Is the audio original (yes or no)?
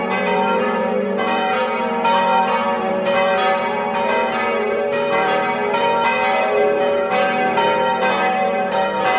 no